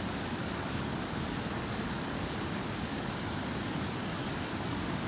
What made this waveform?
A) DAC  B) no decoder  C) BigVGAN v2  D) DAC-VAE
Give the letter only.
A